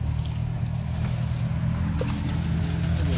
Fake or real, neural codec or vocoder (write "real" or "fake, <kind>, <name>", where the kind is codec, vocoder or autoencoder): real